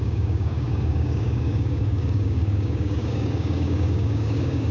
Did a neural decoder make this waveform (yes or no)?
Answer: yes